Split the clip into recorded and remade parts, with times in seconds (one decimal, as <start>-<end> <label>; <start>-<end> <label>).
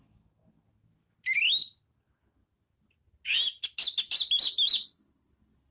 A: 0.0-0.7 remade; 0.7-1.9 recorded; 1.9-2.4 remade; 2.4-5.7 recorded